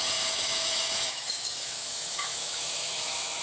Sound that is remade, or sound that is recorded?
remade